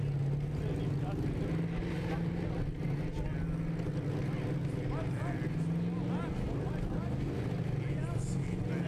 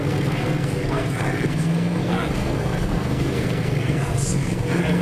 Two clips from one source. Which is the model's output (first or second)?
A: second